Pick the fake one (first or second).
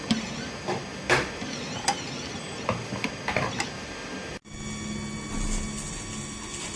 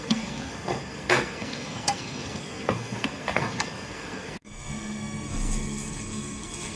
second